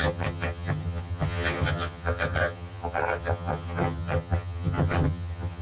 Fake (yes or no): yes